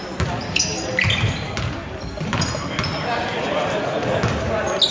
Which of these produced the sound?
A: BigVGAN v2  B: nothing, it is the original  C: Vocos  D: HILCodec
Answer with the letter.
B